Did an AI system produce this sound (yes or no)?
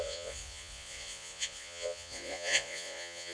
yes